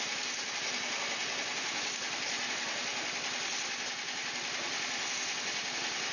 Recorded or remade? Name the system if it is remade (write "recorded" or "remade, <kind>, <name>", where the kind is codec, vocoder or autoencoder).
recorded